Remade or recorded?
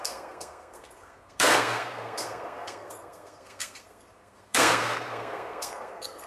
remade